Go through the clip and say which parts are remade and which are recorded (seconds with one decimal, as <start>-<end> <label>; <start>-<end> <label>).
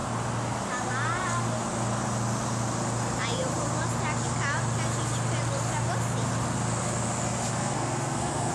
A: 0.0-7.6 recorded; 7.6-8.5 remade